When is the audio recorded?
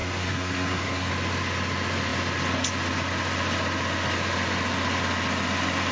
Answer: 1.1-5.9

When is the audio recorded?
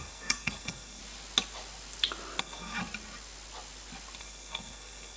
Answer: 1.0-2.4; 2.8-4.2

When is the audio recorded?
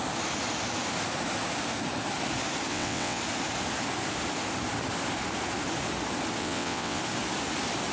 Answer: 0.0-2.7; 3.2-6.4; 7.0-7.9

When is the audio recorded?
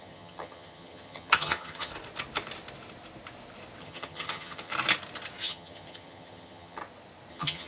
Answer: 1.9-3.8; 4.7-5.4; 6.8-7.3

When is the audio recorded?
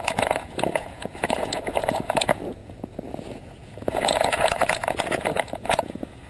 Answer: none